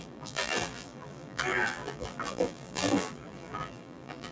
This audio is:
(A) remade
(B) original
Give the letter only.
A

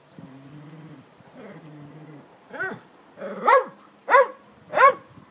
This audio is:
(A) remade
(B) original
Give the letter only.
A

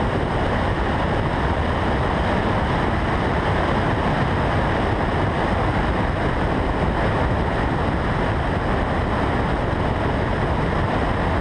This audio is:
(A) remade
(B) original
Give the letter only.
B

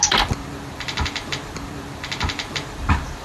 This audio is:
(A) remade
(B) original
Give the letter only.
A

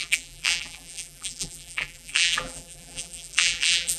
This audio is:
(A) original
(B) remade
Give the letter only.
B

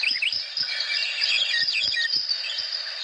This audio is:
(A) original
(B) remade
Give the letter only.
A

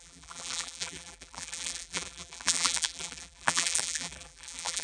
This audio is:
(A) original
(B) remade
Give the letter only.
B